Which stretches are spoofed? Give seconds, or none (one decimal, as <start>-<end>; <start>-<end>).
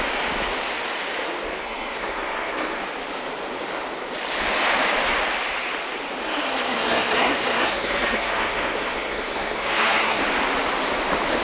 1.6-2.8; 6.2-10.2